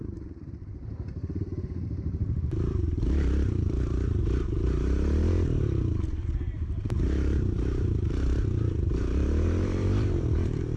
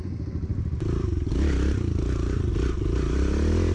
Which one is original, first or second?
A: second